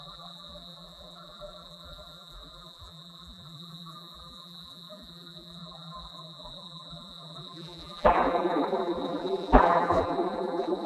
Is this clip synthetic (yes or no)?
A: yes